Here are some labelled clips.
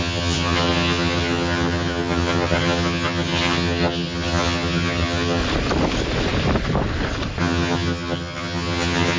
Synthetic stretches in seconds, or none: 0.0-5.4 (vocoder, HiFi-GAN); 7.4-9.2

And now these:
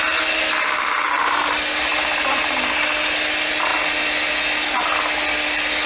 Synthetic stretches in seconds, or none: none

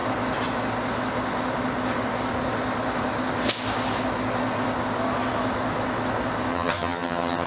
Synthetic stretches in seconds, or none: 6.5-7.5 (vocoder, HiFi-GAN)